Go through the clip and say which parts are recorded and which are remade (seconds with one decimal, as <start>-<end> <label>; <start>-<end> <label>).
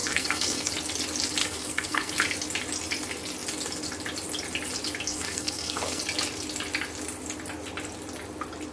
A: 0.0-0.7 remade; 0.7-1.4 recorded; 1.4-2.1 remade; 2.1-5.1 recorded; 5.1-6.0 remade; 6.0-8.7 recorded